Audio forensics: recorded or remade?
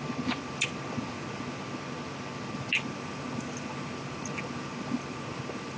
recorded